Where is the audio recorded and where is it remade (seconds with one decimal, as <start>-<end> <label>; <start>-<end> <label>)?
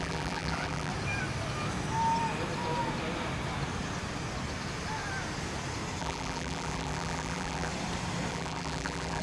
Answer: 0.0-0.9 remade; 0.9-6.0 recorded; 6.0-7.7 remade; 7.7-8.3 recorded; 8.3-9.2 remade